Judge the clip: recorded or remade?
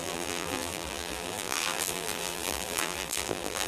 remade